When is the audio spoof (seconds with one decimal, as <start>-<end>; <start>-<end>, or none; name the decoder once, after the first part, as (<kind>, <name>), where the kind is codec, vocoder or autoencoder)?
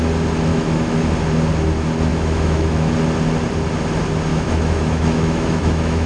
0.5-1.1 (autoencoder, DAC-VAE); 2.1-2.9; 4.3-6.1